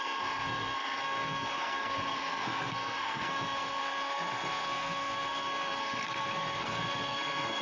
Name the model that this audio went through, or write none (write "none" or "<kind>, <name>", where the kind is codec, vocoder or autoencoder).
codec, SNAC